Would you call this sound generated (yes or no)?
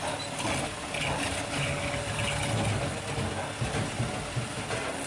no